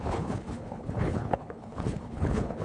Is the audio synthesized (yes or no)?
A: yes